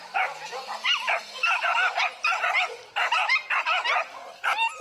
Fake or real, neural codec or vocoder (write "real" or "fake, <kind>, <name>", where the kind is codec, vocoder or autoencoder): real